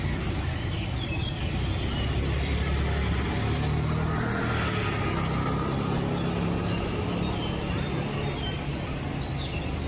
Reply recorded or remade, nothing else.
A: recorded